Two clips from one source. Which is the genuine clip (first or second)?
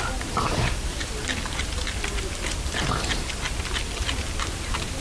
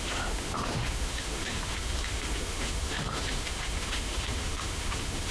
first